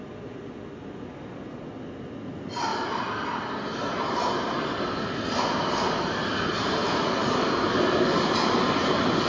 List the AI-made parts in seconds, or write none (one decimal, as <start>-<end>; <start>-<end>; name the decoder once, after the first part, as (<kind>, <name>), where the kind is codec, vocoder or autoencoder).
none